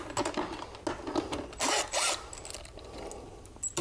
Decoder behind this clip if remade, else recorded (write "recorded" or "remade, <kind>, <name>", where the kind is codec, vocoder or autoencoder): recorded